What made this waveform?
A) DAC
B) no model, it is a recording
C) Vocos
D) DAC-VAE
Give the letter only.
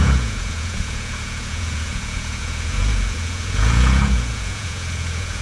C